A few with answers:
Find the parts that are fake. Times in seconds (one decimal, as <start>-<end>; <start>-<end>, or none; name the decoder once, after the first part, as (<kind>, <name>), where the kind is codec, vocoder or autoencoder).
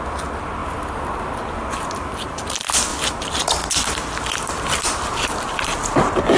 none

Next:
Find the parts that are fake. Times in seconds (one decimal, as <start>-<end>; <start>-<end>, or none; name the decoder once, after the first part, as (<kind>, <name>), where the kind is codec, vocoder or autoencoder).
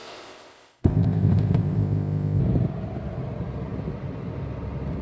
0.0-2.4 (codec, ZipCodec)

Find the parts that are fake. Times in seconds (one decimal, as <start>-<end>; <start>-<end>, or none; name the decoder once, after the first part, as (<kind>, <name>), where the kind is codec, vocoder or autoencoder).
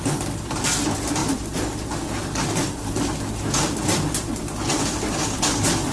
none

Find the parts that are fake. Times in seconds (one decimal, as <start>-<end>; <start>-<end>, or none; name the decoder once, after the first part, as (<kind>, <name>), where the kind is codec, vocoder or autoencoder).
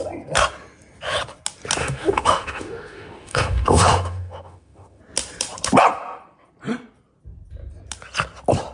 1.8-5.0 (autoencoder, DAC-VAE)